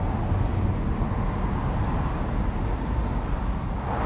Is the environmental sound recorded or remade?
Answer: recorded